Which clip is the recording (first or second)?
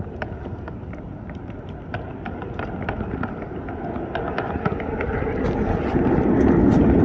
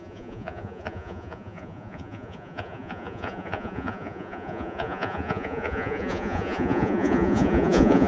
first